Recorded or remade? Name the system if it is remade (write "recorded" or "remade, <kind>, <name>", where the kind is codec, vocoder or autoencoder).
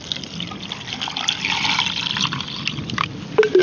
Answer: recorded